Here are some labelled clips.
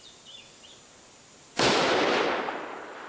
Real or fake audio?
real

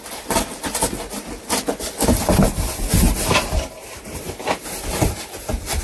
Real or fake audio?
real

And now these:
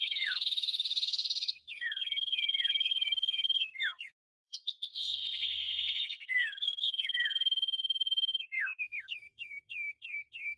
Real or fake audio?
fake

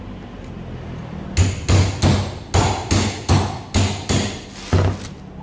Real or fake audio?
real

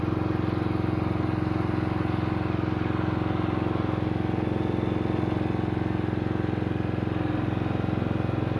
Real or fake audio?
real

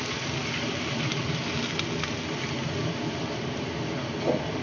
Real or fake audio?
real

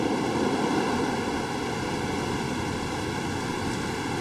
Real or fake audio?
real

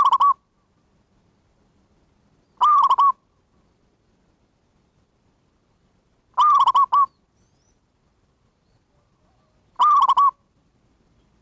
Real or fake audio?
real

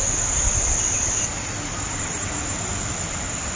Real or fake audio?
real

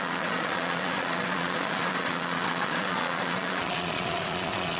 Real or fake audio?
fake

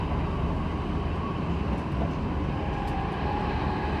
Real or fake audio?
real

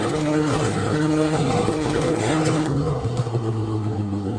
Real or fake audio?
fake